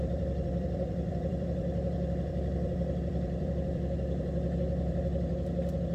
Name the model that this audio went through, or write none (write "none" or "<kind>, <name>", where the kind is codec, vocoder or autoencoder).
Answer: vocoder, BigVGAN v2